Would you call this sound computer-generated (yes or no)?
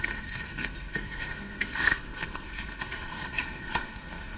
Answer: yes